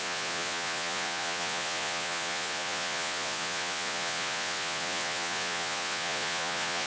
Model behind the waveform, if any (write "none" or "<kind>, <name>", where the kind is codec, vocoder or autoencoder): vocoder, Vocos